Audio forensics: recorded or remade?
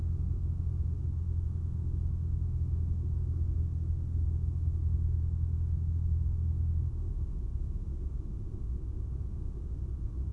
remade